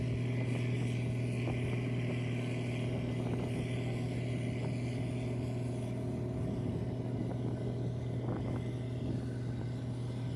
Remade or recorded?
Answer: recorded